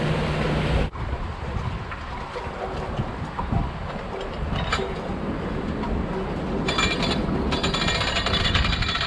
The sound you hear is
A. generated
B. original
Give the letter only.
B